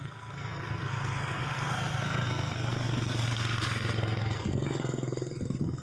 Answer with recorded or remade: remade